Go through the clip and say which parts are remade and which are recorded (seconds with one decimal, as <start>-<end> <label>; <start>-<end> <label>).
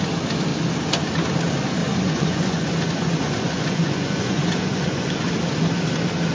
0.0-1.8 recorded; 1.8-5.3 remade; 5.3-6.3 recorded